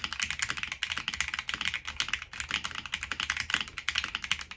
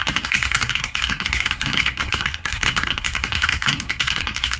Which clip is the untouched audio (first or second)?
first